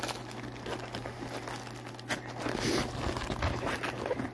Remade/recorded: recorded